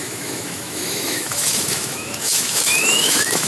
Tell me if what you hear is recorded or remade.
remade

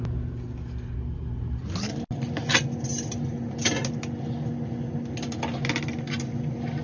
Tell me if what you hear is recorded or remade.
recorded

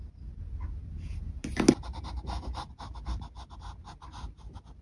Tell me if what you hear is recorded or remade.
recorded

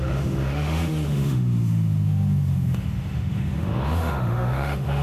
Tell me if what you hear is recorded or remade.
remade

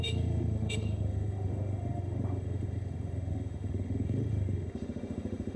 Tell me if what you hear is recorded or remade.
remade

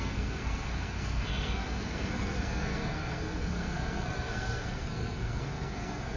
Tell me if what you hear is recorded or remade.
remade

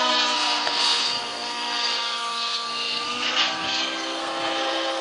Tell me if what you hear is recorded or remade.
remade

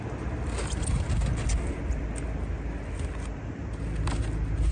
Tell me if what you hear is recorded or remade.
recorded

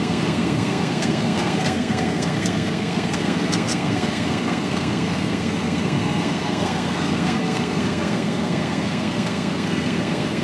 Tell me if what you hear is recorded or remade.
remade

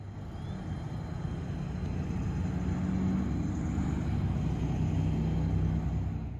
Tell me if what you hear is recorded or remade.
recorded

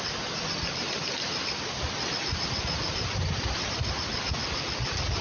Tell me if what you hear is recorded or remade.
recorded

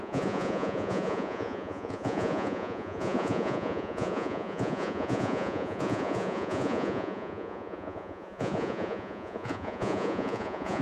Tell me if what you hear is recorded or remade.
remade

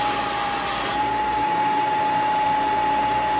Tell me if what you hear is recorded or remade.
recorded